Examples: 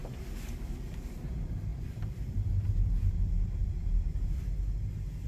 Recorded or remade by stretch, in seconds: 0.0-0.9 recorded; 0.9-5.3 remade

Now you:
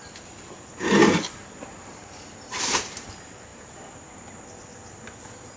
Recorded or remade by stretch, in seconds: 0.0-1.0 recorded; 1.0-3.0 remade; 3.0-3.5 recorded; 3.5-4.3 remade; 4.3-5.6 recorded